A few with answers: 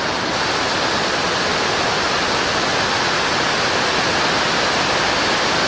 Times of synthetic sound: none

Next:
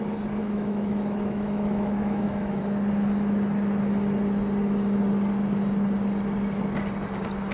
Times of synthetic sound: 0.4-2.6

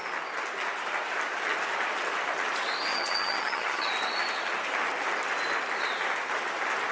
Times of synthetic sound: 2.9-3.9

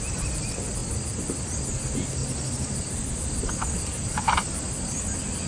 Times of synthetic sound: none

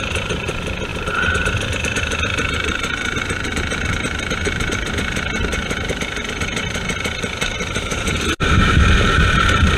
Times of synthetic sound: 0.0-9.8

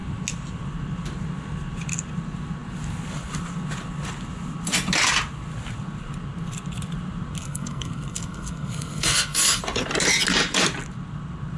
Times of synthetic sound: 7.4-9.6